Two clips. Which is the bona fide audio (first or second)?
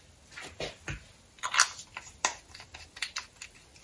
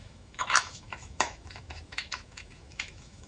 first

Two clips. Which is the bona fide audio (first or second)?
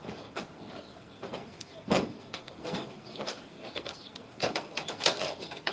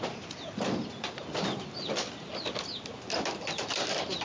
second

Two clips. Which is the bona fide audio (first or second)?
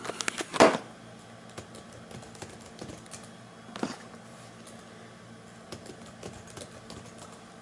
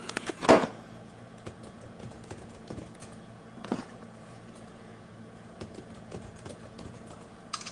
first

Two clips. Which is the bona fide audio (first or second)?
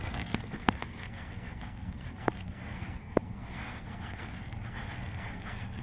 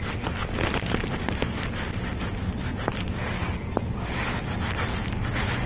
second